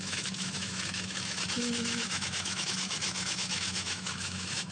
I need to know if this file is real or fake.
fake